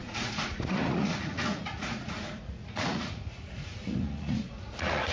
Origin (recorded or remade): remade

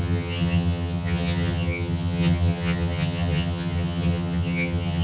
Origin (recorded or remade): remade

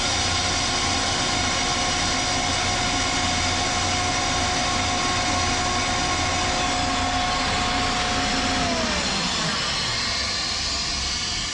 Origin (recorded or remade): recorded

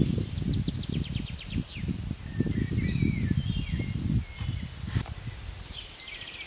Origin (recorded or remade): recorded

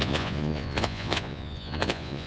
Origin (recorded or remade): remade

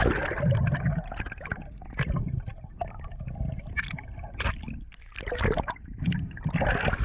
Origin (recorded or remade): recorded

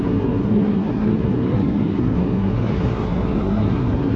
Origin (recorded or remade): remade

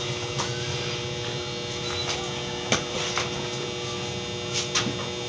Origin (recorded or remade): recorded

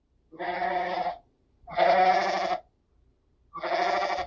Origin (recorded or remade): recorded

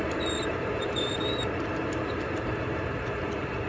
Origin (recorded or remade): remade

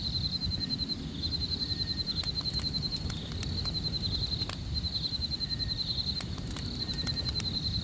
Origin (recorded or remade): recorded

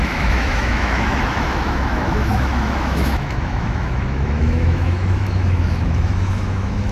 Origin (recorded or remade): remade